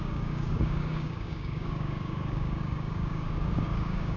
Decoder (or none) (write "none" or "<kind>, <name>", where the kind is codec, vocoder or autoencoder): codec, DAC